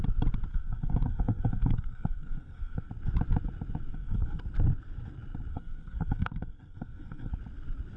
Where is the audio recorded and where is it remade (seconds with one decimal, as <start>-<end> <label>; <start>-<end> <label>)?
0.0-0.5 recorded; 0.5-2.9 remade; 2.9-3.9 recorded; 3.9-4.4 remade; 4.4-5.5 recorded; 5.5-7.3 remade; 7.3-8.0 recorded